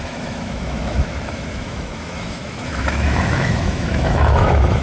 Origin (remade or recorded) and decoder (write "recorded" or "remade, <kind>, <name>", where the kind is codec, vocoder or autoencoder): remade, autoencoder, DAC-VAE